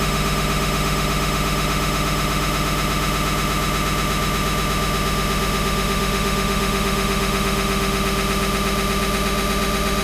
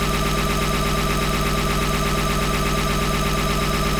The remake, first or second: first